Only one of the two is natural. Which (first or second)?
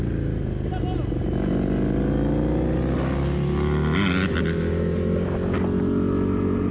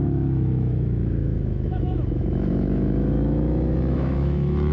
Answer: first